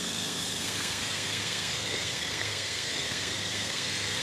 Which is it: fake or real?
fake